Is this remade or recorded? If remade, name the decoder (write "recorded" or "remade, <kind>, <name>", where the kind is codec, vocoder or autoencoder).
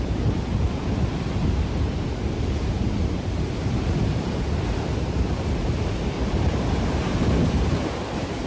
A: remade, vocoder, BigVGAN v2